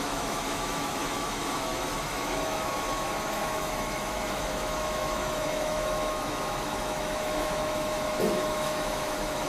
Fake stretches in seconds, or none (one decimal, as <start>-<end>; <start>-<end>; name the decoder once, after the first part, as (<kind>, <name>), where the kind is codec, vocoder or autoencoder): 0.0-9.5 (autoencoder, DAC-VAE)